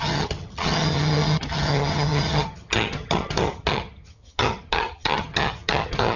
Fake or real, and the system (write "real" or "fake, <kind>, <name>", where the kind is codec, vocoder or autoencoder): fake, vocoder, HiFi-GAN